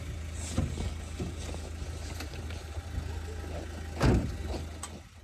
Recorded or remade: recorded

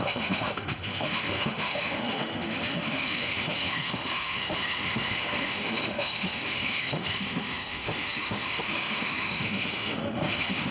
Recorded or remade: remade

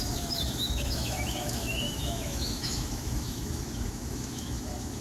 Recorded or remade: remade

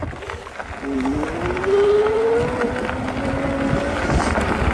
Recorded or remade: recorded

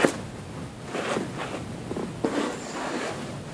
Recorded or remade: recorded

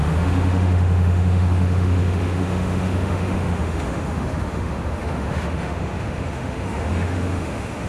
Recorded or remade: remade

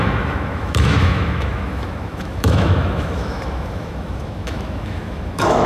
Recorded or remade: remade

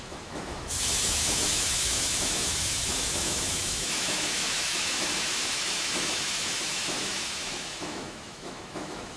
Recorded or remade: remade